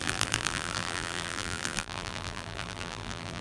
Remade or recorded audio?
remade